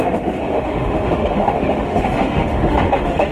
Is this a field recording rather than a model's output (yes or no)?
no